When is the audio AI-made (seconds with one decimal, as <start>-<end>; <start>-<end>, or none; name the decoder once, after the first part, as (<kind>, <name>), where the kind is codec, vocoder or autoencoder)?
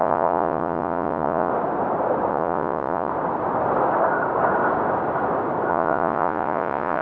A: 0.0-1.5 (vocoder, Vocos); 2.3-3.1; 5.7-7.0